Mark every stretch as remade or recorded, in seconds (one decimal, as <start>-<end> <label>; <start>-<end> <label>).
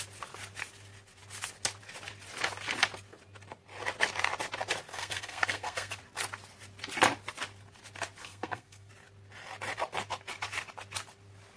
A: 0.0-4.9 recorded; 4.9-6.0 remade; 6.0-8.2 recorded; 8.2-8.9 remade; 8.9-11.6 recorded